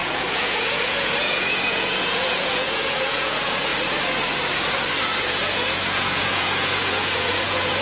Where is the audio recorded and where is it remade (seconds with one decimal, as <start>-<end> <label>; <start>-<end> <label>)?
0.0-3.7 remade; 3.7-5.2 recorded; 5.2-7.8 remade